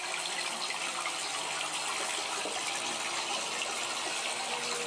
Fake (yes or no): no